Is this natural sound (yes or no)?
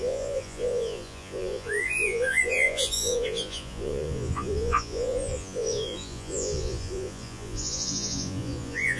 no